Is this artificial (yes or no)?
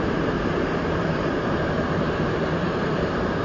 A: yes